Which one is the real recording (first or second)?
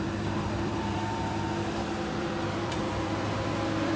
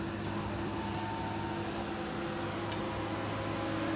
second